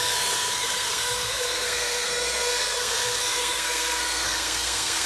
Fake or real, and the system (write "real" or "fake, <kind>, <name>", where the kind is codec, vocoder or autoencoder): fake, codec, SNAC